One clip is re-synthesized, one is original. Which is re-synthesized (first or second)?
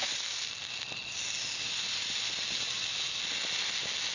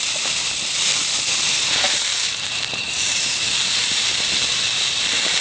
second